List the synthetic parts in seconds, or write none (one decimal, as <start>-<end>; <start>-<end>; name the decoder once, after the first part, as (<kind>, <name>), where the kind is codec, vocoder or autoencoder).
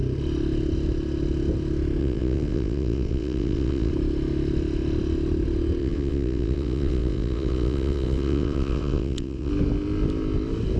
2.0-3.9 (vocoder, WaveNeXt); 5.8-9.5